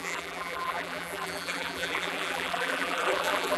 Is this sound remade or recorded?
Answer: remade